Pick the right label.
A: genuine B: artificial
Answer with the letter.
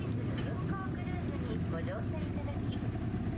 A